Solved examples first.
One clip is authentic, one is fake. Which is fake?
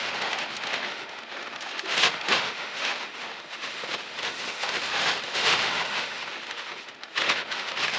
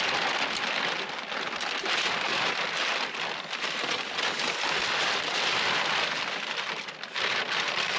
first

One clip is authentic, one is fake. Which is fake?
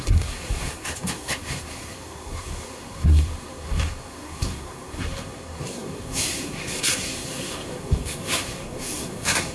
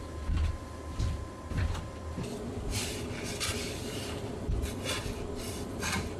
first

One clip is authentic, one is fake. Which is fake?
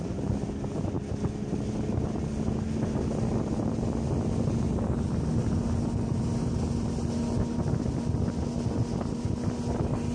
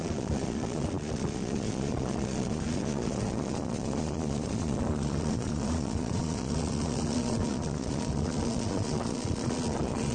second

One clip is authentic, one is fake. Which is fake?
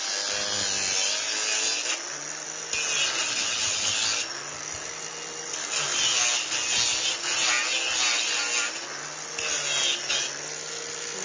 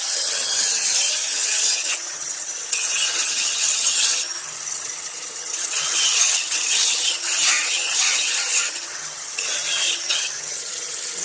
second